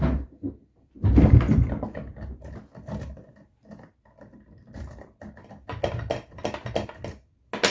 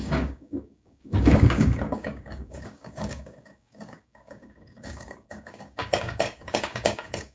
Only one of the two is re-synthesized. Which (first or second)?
second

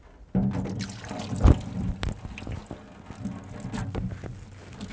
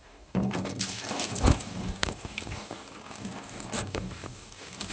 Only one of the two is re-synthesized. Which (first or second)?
second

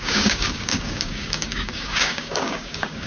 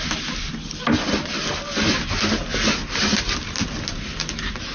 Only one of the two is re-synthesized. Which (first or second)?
first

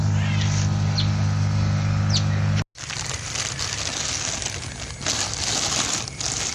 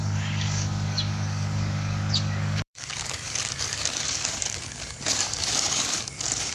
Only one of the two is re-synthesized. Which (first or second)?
second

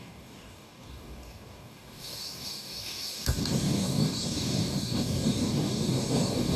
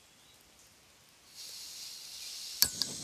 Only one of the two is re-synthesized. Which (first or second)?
first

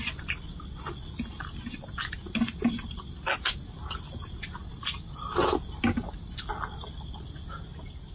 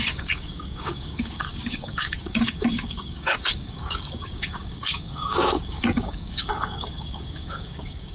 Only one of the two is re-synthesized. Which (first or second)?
second